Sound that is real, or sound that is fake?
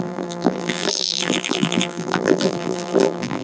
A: fake